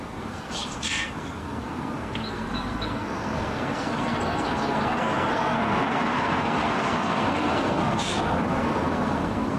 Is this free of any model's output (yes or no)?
no